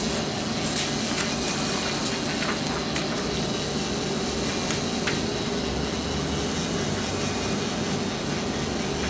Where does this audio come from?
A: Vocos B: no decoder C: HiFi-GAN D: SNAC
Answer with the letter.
B